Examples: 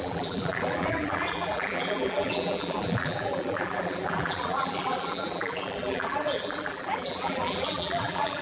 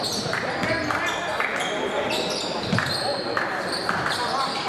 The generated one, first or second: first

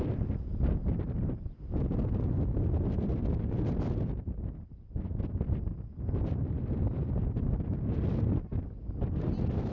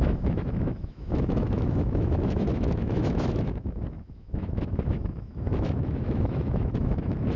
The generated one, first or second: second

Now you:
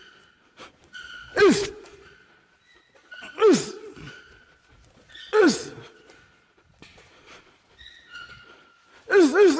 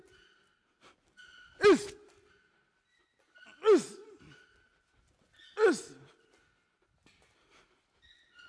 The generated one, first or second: first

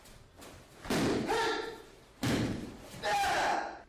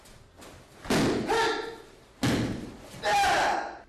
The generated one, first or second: first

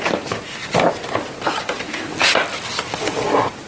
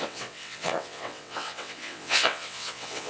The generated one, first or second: second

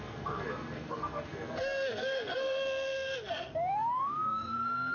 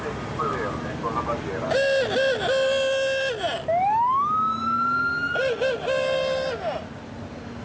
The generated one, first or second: first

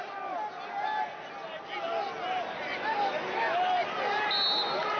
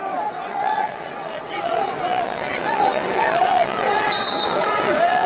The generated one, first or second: second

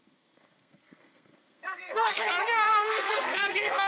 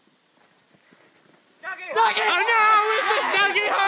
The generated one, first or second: first